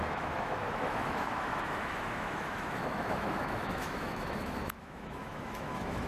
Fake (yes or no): yes